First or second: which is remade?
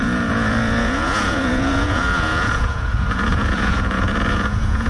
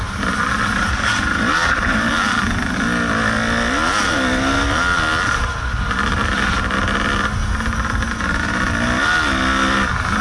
first